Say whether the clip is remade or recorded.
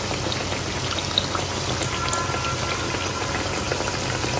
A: recorded